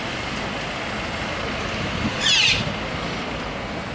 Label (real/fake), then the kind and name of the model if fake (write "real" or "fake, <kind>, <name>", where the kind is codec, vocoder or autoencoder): real